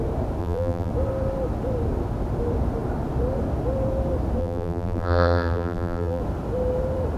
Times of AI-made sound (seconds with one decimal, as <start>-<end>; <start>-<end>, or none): 0.4-0.9; 4.4-6.2